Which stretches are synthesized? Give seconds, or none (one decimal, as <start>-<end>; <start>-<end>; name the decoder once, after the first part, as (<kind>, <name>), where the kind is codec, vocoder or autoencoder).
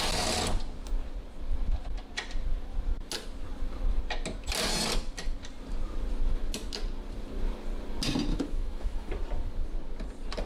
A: 8.3-9.1 (autoencoder, DAC-VAE)